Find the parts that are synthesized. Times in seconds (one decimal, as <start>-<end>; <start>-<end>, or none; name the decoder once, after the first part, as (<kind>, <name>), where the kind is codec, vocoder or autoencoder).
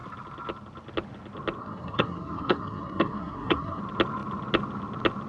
1.6-3.8 (codec, SNAC)